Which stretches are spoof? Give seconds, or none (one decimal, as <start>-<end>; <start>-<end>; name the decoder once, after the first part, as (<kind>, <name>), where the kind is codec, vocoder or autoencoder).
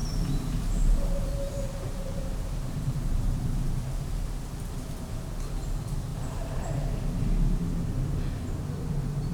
0.0-3.7 (vocoder, BigVGAN v2); 6.1-6.7